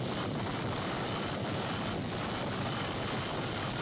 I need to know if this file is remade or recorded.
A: recorded